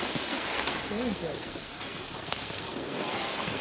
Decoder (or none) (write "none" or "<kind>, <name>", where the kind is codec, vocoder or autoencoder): codec, SNAC